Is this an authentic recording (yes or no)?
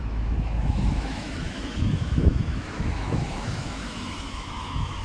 no